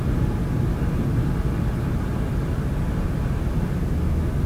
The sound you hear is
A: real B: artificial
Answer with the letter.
A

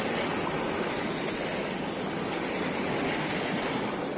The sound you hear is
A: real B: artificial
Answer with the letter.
A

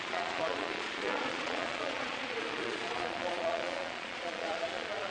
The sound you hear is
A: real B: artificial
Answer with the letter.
B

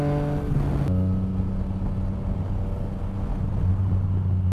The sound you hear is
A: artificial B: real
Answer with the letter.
B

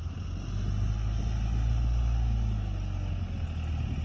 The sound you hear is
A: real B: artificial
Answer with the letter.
A